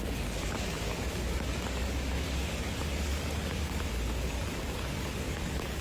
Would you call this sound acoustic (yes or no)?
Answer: no